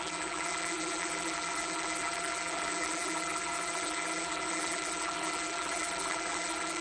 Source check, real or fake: fake